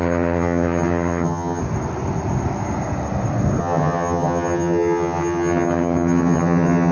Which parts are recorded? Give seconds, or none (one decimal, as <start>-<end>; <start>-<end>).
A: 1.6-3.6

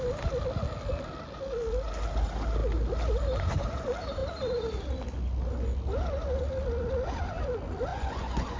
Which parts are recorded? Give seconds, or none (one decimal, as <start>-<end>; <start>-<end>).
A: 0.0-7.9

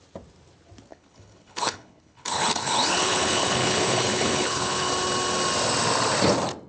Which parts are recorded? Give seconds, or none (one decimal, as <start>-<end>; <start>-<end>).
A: 0.0-0.9; 4.9-6.7

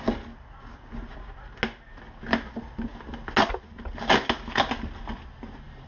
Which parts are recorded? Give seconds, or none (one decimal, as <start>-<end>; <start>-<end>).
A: 0.0-5.9

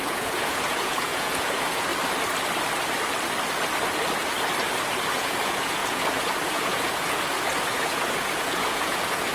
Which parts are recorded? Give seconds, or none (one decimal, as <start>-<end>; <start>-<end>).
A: 1.9-5.1

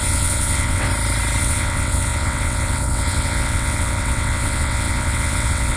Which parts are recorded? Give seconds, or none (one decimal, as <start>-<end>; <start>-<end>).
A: 0.9-1.4

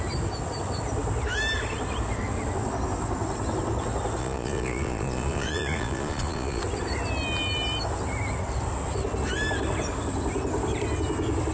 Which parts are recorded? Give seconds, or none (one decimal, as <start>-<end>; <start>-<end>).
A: 0.0-4.2; 6.6-11.5